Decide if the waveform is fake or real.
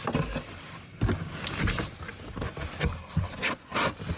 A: real